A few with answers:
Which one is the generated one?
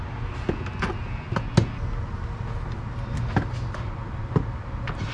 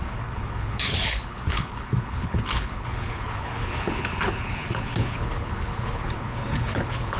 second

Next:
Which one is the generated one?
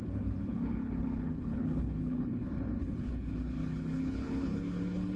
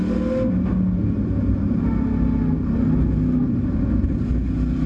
first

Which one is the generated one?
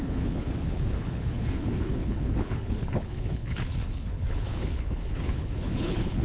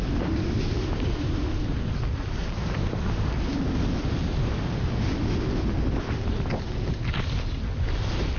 first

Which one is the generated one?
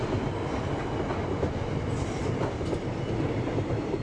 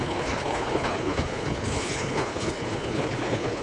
second